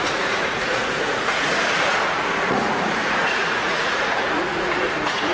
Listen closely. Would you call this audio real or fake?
fake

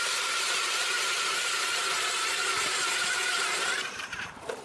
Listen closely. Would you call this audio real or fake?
fake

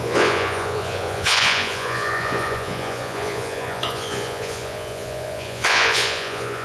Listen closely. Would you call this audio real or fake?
fake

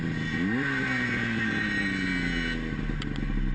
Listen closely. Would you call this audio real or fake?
real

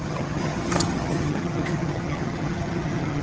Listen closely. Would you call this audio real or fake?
fake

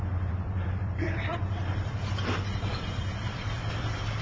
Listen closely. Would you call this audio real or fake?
fake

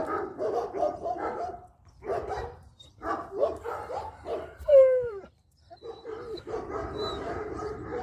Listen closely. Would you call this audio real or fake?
fake